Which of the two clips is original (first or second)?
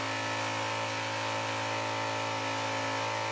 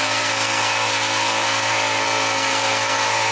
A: first